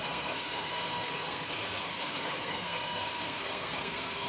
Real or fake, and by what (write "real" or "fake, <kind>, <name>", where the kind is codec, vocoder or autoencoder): fake, codec, SNAC